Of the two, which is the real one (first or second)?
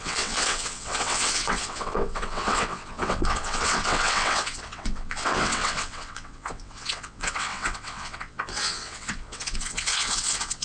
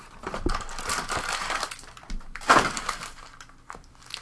second